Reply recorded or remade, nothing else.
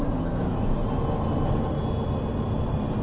recorded